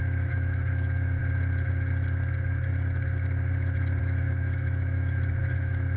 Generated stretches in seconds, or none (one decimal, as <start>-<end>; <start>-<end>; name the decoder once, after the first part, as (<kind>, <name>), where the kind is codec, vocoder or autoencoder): 0.0-1.2 (autoencoder, DAC-VAE); 4.0-6.0